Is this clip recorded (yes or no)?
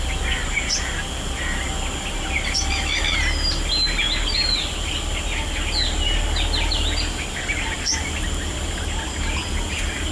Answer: yes